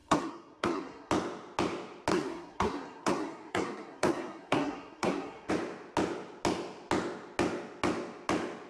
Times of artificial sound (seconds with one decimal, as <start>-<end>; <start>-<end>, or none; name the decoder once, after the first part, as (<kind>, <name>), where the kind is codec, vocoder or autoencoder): 0.0-1.1 (codec, SNAC); 2.1-5.5